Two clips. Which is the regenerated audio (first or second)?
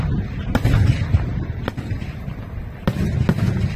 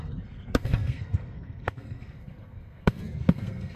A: second